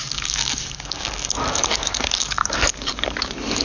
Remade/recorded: remade